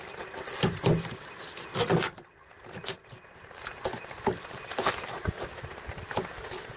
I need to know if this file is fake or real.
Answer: real